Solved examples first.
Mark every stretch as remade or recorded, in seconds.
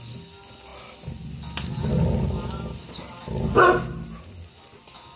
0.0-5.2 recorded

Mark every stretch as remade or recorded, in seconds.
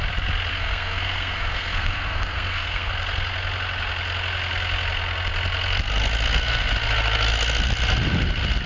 0.0-0.5 recorded; 0.5-2.9 remade; 2.9-8.7 recorded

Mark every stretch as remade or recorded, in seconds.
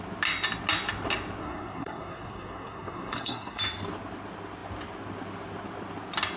0.0-1.4 recorded; 1.4-3.6 remade; 3.6-6.4 recorded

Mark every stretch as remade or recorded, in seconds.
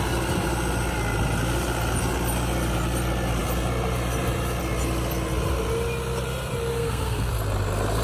0.0-6.7 recorded; 6.7-7.3 remade; 7.3-8.0 recorded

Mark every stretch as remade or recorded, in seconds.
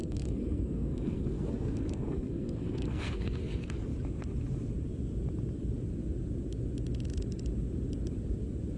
0.0-3.9 remade; 3.9-8.8 recorded